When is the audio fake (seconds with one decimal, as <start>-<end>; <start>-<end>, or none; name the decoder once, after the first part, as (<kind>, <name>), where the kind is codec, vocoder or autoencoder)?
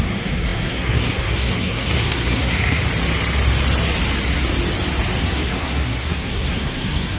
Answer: 0.0-2.8 (codec, SNAC); 5.2-7.2